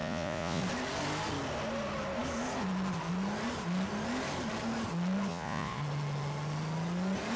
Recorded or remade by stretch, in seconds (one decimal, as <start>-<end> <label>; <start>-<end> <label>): 0.0-0.6 remade; 0.6-5.3 recorded; 5.3-5.8 remade; 5.8-7.4 recorded